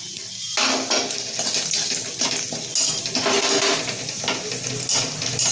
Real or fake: real